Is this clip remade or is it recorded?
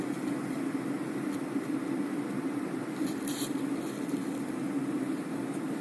recorded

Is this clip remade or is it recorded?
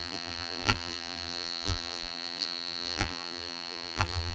remade